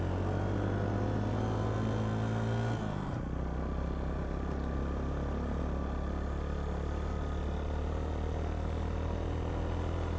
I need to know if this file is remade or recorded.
recorded